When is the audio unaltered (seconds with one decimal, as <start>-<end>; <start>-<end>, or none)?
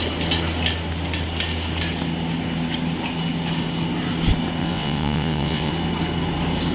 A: 0.0-4.6; 5.7-6.7